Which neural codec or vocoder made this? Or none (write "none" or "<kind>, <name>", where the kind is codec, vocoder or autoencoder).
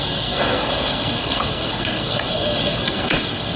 codec, SNAC